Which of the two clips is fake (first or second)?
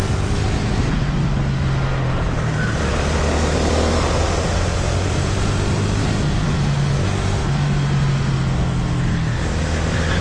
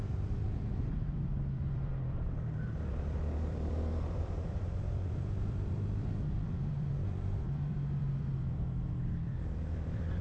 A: second